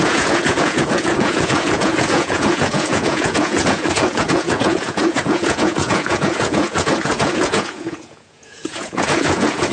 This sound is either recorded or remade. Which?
remade